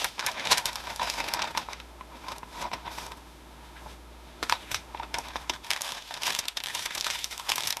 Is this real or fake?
fake